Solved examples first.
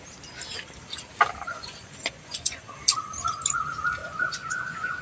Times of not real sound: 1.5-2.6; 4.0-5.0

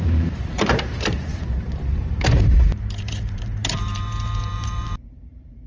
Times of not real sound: 0.0-5.7

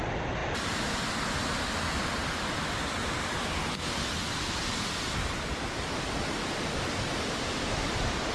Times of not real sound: none

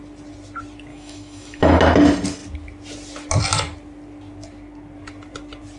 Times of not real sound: 0.9-1.8

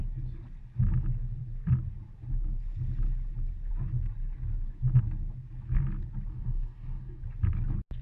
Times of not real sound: 6.3-7.2

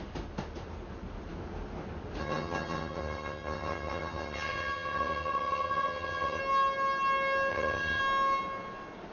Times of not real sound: 2.2-6.4; 7.5-8.0

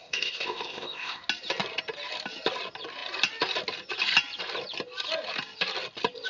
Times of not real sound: 0.0-1.2

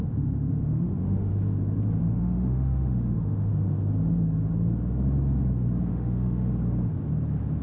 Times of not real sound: 0.0-1.3; 2.0-3.5; 5.9-6.5